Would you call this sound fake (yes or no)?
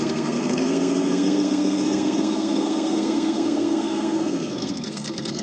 yes